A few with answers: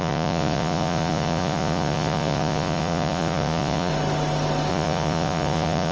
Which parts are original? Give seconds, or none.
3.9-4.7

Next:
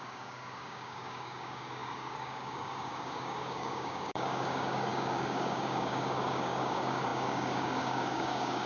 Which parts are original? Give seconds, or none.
none

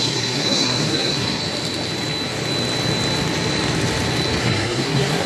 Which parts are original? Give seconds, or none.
1.4-4.4

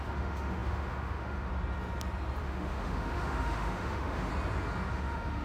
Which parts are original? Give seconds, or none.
1.5-2.4; 4.3-4.9

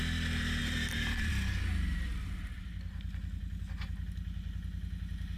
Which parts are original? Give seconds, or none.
0.0-0.6; 1.3-5.4